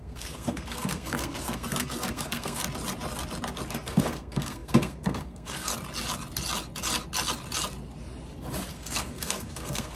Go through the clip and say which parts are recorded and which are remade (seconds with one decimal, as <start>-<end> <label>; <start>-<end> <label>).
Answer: 0.0-2.6 remade; 2.6-3.7 recorded; 3.7-5.7 remade; 5.7-8.7 recorded; 8.7-10.0 remade